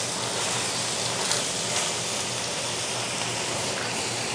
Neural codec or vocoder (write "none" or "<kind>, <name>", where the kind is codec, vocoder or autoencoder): none